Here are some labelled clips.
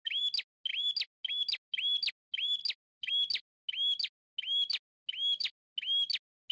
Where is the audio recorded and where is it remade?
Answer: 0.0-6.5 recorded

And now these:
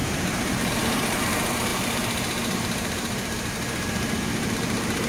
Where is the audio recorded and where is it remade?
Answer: 0.0-5.1 remade

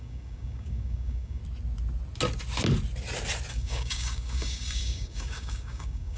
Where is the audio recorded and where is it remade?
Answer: 0.0-1.4 remade; 1.4-3.5 recorded; 3.5-6.2 remade

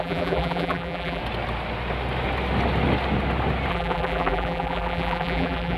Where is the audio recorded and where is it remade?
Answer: 0.0-1.2 remade; 1.2-3.7 recorded; 3.7-5.8 remade

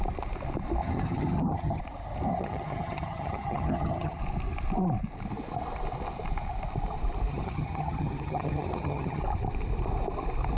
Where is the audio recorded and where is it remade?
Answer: 0.0-0.8 recorded; 0.8-1.8 remade; 1.8-2.3 recorded; 2.3-4.2 remade; 4.2-7.3 recorded; 7.3-9.2 remade; 9.2-10.6 recorded